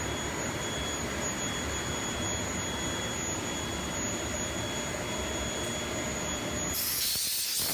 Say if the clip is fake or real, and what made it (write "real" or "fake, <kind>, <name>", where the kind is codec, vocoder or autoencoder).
real